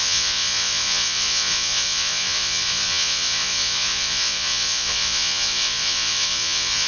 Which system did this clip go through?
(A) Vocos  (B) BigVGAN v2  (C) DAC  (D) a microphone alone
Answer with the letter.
A